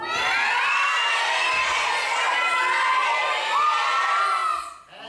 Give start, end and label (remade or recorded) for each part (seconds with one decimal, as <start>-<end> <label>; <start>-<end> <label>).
0.0-5.1 recorded